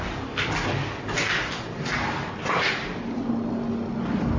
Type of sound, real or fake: real